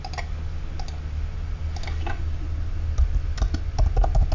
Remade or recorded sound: recorded